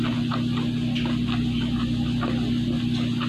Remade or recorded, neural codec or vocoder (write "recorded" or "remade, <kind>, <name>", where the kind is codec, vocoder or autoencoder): recorded